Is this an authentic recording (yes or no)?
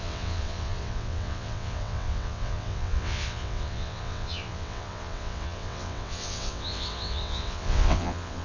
no